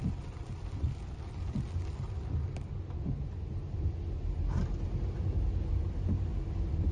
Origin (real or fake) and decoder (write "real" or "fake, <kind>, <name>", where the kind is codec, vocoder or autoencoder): real